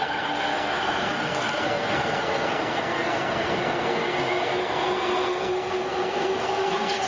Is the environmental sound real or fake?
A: fake